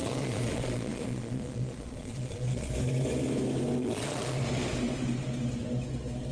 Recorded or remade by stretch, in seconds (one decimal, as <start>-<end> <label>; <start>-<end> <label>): 0.0-2.7 remade; 2.7-3.8 recorded; 3.8-4.4 remade; 4.4-6.3 recorded